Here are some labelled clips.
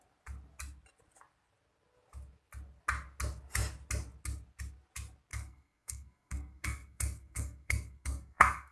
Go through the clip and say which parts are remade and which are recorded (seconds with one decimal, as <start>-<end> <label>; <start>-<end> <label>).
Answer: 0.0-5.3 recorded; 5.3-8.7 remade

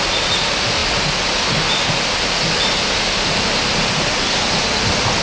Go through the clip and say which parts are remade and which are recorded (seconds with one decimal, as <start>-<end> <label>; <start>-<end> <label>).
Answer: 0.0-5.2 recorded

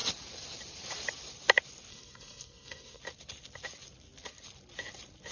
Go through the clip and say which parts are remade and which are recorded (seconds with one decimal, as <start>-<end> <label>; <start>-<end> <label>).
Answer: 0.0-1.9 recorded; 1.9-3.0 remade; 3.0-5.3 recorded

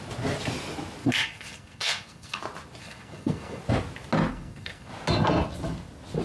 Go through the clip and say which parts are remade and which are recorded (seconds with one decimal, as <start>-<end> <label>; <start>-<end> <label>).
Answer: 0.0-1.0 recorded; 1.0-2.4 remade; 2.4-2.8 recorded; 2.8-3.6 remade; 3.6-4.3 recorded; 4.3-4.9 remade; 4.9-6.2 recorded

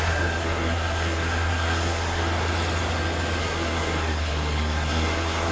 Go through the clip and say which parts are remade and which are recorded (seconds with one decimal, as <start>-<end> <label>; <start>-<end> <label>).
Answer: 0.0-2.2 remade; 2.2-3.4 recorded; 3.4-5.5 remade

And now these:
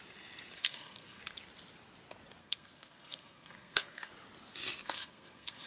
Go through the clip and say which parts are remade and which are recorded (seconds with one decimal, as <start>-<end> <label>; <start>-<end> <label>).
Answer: 0.0-0.6 recorded; 0.6-1.2 remade; 1.2-2.4 recorded; 2.4-4.1 remade; 4.1-4.8 recorded; 4.8-5.7 remade

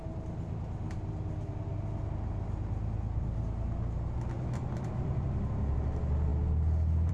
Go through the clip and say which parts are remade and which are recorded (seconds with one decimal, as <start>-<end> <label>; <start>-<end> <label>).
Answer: 0.0-7.1 recorded

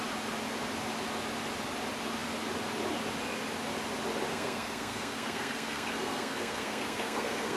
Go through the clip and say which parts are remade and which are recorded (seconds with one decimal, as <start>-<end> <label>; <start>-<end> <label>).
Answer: 0.0-4.3 recorded; 4.3-7.6 remade